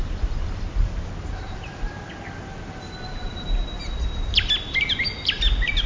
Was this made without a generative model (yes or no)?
yes